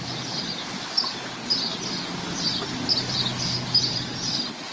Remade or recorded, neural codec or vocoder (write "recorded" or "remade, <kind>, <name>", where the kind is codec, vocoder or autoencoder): recorded